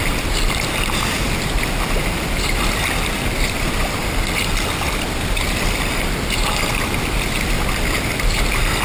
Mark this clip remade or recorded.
recorded